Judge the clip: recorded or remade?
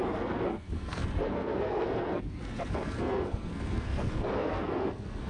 remade